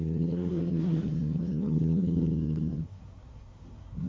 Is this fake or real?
fake